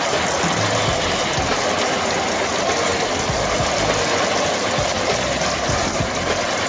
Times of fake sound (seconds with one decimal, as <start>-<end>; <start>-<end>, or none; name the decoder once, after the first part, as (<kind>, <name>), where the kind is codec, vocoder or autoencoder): none